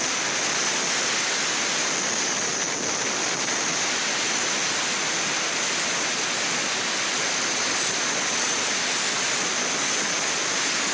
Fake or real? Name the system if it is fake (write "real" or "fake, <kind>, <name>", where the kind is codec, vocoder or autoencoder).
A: real